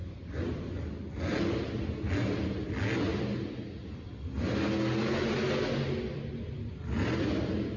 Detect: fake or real real